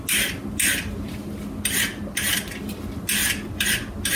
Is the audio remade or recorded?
recorded